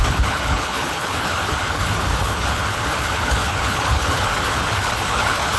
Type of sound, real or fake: fake